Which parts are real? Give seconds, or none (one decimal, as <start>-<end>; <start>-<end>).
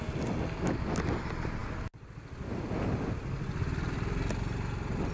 0.0-5.1